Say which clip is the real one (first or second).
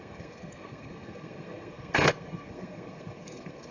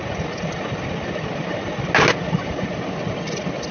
second